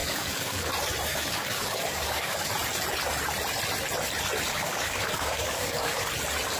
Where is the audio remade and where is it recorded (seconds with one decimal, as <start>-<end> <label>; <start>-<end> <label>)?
0.0-0.7 remade; 0.7-1.1 recorded; 1.1-2.5 remade; 2.5-4.5 recorded; 4.5-6.1 remade; 6.1-6.6 recorded